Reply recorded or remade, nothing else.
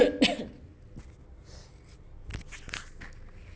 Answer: recorded